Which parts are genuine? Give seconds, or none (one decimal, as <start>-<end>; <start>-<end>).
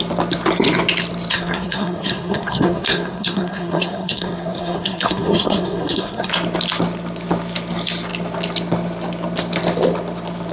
0.0-1.3; 6.3-10.5